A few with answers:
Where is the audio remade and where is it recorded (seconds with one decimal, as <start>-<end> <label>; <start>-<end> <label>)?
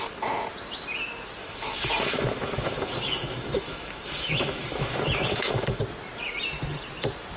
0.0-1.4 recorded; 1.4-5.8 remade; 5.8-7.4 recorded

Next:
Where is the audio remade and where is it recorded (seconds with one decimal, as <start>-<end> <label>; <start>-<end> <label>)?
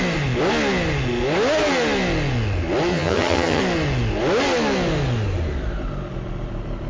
0.0-2.9 recorded; 2.9-3.6 remade; 3.6-6.9 recorded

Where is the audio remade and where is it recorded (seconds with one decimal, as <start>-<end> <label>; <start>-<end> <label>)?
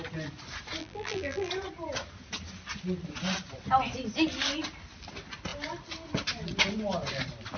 0.0-0.8 recorded; 0.8-1.5 remade; 1.5-7.6 recorded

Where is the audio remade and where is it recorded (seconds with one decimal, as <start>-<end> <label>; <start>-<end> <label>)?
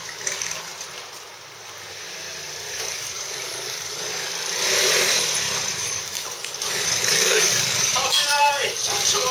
0.0-0.7 remade; 0.7-2.7 recorded; 2.7-4.3 remade; 4.3-5.7 recorded; 5.7-9.3 remade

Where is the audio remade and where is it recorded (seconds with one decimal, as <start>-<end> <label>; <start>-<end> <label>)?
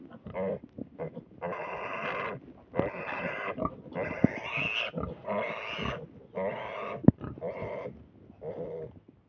0.0-9.3 recorded